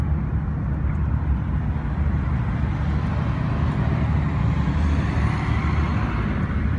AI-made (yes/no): no